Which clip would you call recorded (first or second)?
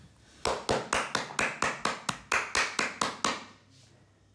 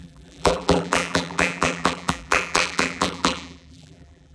first